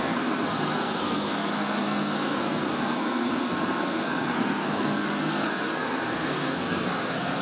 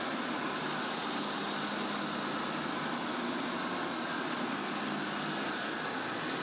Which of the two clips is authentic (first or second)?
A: second